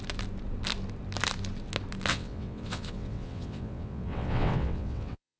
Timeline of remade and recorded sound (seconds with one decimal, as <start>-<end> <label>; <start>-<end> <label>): 0.0-2.1 recorded; 2.1-5.4 remade